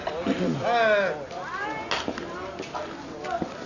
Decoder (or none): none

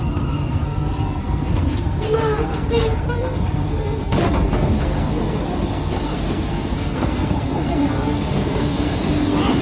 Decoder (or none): codec, SNAC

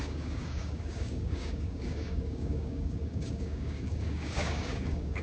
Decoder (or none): codec, DAC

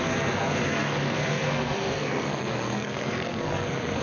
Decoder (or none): codec, SNAC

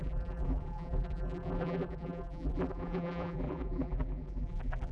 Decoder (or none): vocoder, BigVGAN v2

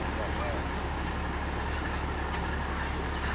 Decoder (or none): none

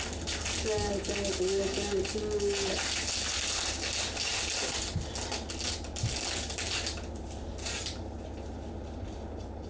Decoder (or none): none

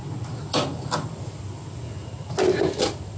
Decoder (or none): none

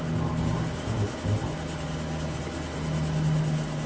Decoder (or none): none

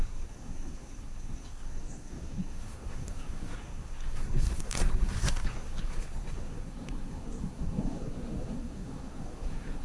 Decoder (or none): codec, SNAC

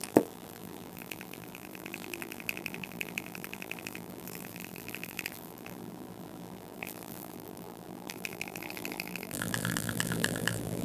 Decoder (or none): vocoder, BigVGAN v2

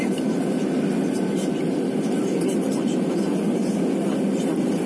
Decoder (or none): none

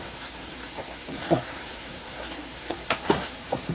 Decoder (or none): codec, SNAC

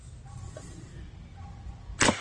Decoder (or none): none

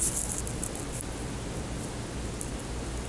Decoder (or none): none